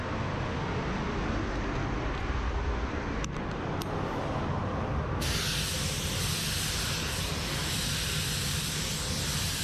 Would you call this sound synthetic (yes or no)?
no